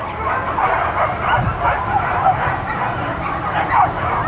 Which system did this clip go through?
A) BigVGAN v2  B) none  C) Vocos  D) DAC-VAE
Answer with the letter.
A